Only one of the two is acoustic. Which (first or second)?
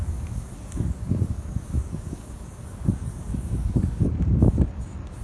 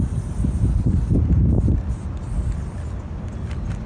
second